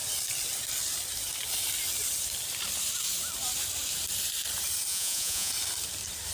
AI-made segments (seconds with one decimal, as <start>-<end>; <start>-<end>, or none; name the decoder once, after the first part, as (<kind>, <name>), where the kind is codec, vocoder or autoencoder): 4.9-5.5 (vocoder, Vocos)